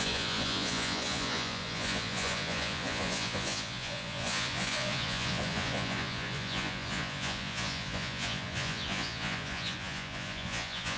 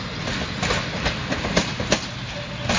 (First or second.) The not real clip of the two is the first